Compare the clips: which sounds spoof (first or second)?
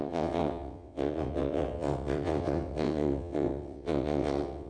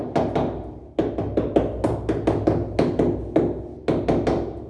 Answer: first